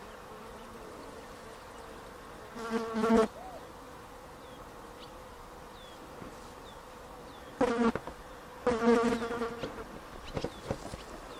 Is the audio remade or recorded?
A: recorded